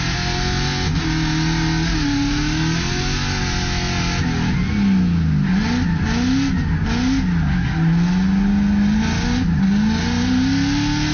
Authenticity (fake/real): real